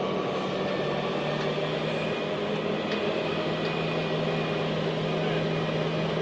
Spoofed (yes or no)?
no